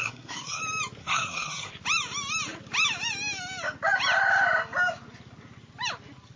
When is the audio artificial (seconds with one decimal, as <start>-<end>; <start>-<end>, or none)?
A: 0.0-0.6; 1.0-1.7